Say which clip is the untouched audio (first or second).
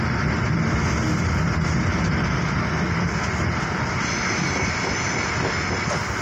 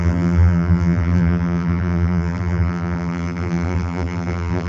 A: first